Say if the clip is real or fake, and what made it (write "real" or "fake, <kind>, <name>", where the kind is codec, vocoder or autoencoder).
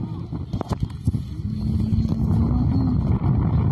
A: real